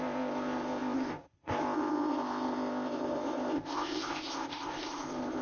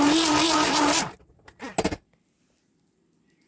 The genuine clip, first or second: second